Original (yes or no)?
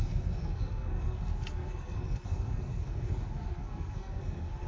no